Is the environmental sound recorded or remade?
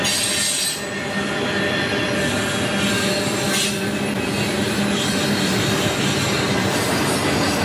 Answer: recorded